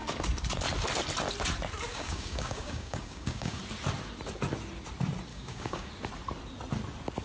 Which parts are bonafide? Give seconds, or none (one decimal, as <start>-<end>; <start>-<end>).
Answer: 0.0-1.9; 3.6-5.3; 5.9-7.2